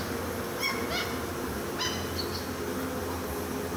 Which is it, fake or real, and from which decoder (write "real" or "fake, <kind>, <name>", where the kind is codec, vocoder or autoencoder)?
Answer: real